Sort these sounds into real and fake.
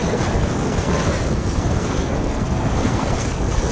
fake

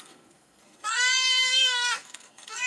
fake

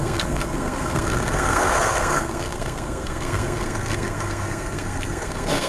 fake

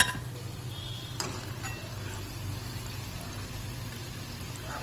real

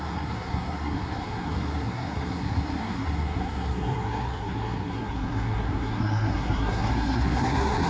fake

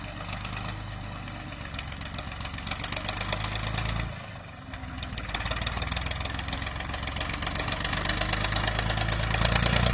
real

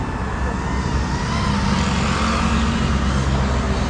real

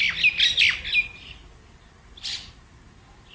real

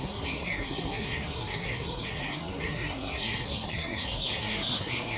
fake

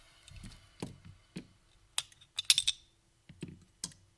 real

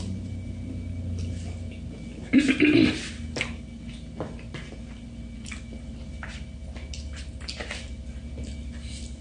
real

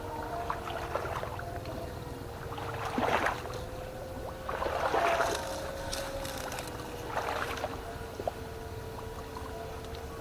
real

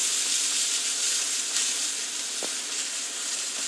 real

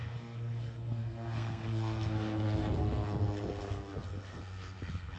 fake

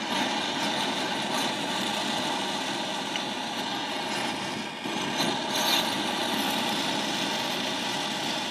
real